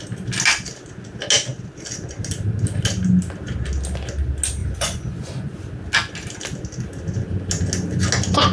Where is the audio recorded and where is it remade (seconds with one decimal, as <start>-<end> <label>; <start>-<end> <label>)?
0.0-4.6 recorded; 4.6-5.5 remade; 5.5-8.5 recorded